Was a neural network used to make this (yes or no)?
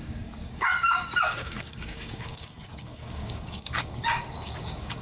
yes